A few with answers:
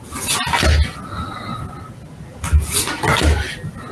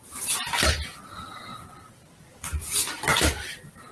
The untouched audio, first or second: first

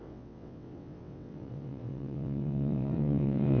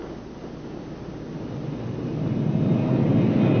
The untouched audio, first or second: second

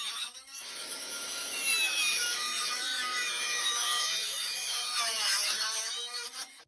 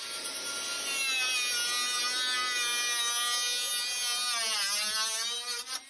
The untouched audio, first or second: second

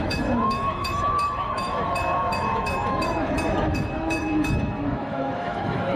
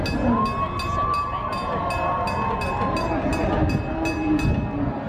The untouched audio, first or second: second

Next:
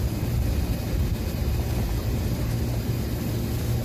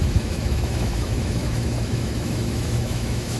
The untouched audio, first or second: first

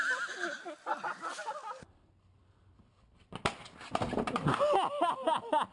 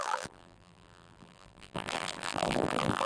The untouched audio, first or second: first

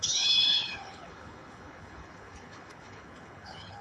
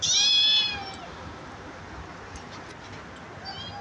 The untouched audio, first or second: second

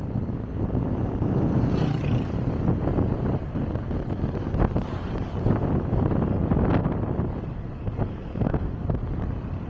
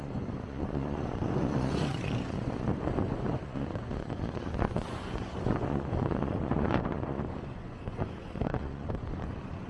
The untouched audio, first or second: first